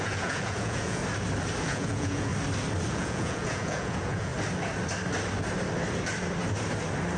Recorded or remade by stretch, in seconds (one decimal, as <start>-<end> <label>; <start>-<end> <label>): 0.0-1.0 remade; 1.0-1.6 recorded; 1.6-2.3 remade; 2.3-2.9 recorded; 2.9-4.3 remade; 4.3-7.2 recorded